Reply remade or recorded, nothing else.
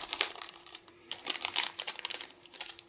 remade